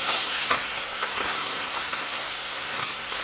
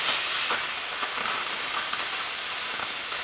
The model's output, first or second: first